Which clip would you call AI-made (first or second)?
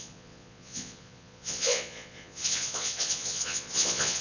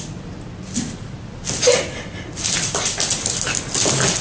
first